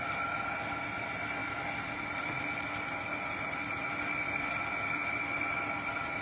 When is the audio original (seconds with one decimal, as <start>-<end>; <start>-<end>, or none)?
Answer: 0.0-6.2